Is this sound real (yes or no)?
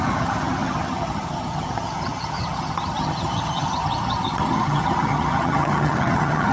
no